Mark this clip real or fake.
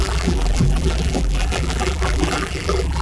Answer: fake